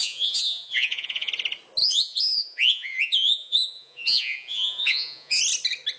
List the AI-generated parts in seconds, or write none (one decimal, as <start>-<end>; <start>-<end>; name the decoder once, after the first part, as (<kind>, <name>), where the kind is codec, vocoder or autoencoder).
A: 0.0-1.3 (vocoder, Vocos); 1.8-5.4